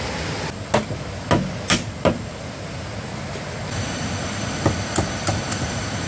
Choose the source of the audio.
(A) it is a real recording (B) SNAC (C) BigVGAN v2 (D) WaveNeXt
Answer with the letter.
A